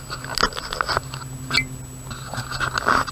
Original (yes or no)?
yes